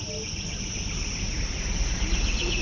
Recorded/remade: recorded